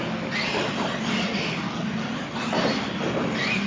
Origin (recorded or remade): recorded